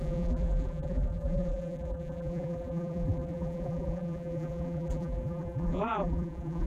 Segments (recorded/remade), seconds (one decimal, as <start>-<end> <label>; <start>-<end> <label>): 0.0-6.7 remade